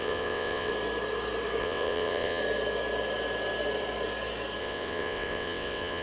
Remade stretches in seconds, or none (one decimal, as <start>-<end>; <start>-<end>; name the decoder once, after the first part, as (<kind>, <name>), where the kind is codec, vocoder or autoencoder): 0.0-0.7 (vocoder, WaveNeXt); 1.6-2.4; 4.6-6.0